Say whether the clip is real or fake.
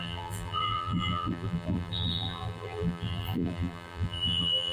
fake